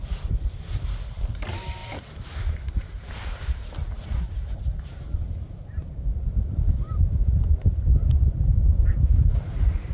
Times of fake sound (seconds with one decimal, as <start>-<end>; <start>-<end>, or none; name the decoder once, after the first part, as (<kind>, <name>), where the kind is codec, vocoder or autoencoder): none